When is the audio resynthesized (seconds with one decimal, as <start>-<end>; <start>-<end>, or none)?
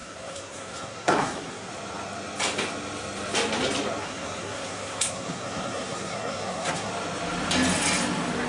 0.0-1.7; 4.0-6.9